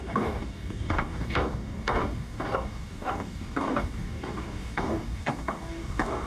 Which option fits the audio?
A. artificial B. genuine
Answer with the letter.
A